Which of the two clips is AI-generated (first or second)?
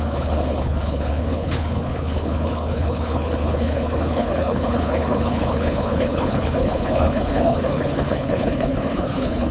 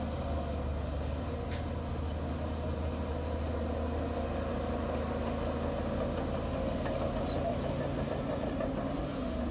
first